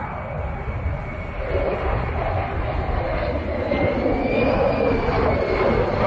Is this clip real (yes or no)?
yes